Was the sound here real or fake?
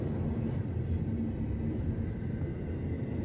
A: real